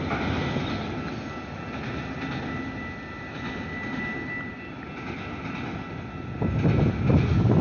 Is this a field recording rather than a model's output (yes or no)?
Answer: yes